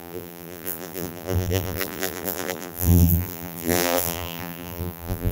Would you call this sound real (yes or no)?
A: no